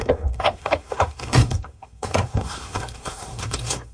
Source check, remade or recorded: remade